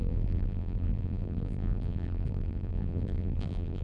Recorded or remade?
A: remade